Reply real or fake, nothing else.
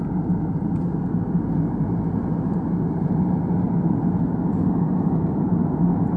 real